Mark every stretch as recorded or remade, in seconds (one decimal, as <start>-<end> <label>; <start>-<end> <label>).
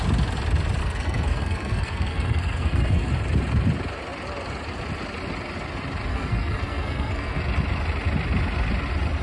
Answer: 0.0-0.8 recorded; 0.8-3.1 remade; 3.1-6.1 recorded; 6.1-7.4 remade; 7.4-9.2 recorded